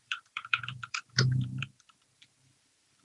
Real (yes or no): no